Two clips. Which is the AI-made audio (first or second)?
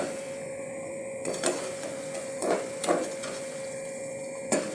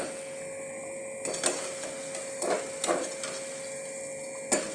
first